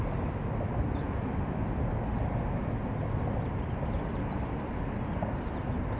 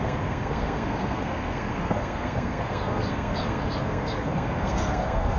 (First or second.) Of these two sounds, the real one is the first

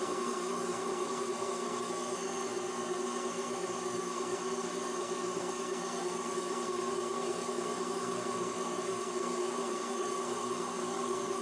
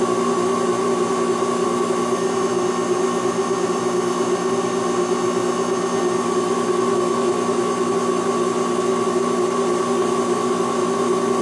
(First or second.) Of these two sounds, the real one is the second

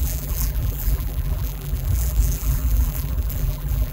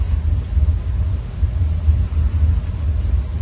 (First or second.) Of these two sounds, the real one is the second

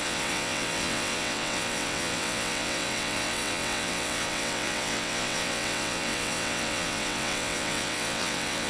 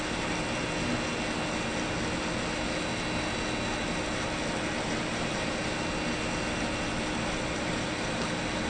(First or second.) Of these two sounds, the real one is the second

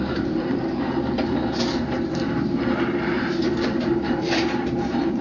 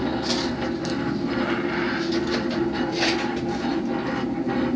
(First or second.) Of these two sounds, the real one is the second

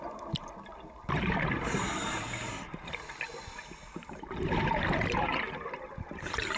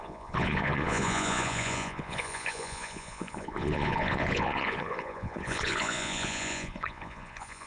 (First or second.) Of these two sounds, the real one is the first